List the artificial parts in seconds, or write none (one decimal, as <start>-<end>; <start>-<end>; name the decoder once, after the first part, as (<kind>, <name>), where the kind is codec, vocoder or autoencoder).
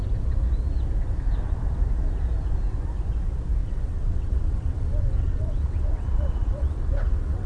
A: 3.6-7.5 (vocoder, WaveNeXt)